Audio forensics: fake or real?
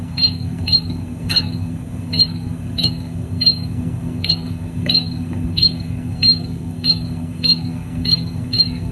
fake